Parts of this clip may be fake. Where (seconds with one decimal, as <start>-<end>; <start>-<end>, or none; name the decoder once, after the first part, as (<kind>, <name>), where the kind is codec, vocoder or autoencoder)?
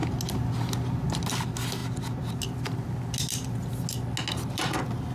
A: none